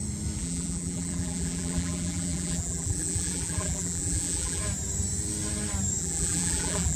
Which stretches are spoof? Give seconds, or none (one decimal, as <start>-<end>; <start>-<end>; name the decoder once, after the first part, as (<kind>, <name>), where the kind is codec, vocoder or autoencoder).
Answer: 0.4-4.6 (vocoder, BigVGAN v2); 6.0-7.0